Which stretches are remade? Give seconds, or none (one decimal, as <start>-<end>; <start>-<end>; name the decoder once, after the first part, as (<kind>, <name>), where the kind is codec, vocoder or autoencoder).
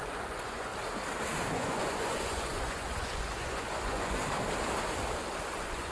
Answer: 0.0-0.7 (vocoder, Vocos); 1.5-4.2; 5.5-5.9